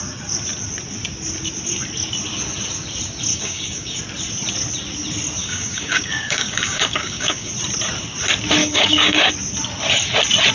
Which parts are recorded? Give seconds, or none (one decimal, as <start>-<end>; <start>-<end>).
0.0-3.3; 4.0-5.4; 7.5-8.6; 9.3-10.5